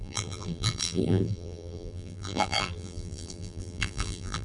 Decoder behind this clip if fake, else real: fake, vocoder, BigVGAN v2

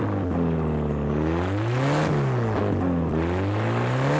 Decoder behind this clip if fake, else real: real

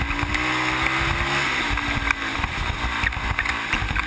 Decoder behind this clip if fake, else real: real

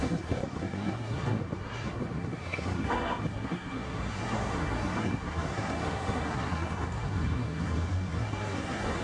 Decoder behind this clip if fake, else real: fake, codec, SNAC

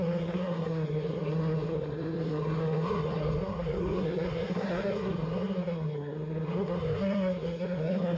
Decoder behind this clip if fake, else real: fake, codec, SNAC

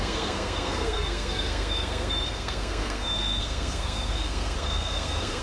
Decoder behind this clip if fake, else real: fake, codec, SNAC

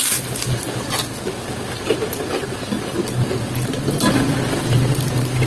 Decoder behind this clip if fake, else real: real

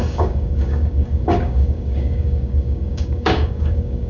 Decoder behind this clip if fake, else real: fake, codec, DAC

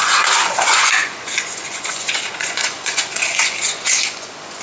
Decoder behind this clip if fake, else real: fake, vocoder, Vocos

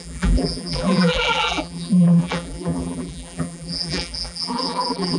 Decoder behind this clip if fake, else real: fake, vocoder, BigVGAN v2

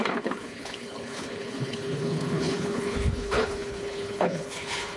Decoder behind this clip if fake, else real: fake, codec, HILCodec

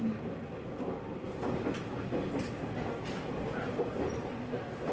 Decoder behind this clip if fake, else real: real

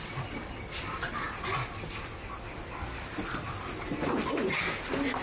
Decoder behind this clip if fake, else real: real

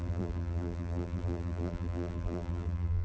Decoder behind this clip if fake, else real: fake, vocoder, BigVGAN v2